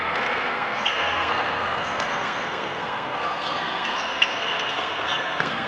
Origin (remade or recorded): remade